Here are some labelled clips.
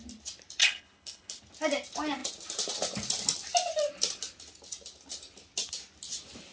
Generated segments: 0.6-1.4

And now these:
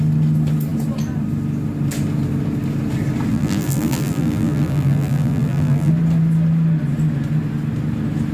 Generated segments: 3.3-5.9

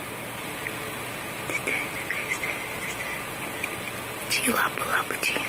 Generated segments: none

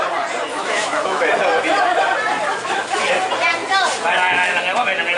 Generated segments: 0.5-1.3; 2.5-3.0

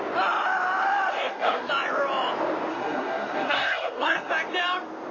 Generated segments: 1.1-1.7; 2.7-4.3